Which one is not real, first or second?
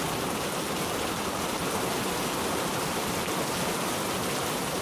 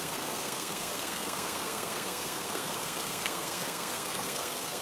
second